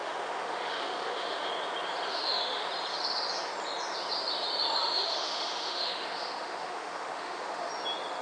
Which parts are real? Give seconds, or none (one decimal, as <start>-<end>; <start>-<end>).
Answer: 1.5-2.1; 2.7-4.8; 7.7-8.2